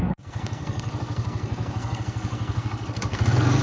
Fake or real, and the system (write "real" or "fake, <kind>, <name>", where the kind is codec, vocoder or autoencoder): fake, codec, SNAC